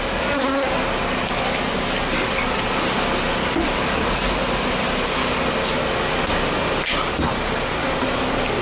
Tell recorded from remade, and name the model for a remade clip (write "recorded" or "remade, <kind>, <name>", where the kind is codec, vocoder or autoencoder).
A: recorded